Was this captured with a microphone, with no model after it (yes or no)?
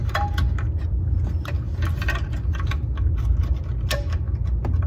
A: yes